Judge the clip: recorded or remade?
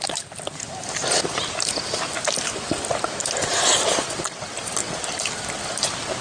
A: remade